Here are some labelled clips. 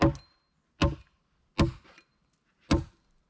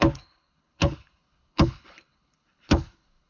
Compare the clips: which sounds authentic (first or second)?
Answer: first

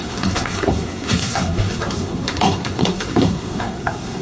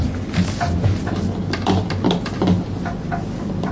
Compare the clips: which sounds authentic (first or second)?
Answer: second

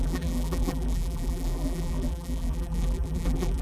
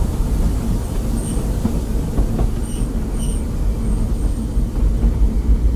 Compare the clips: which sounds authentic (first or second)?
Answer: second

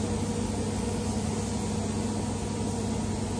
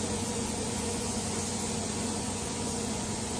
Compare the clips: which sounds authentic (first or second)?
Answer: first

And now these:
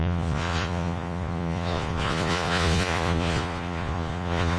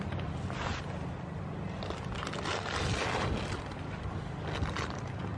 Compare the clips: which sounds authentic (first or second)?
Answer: second